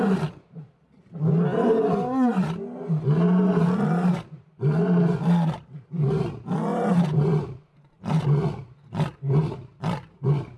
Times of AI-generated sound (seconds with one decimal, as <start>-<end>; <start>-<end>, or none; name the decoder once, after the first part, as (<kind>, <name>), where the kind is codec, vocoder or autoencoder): 6.7-8.1 (vocoder, BigVGAN v2)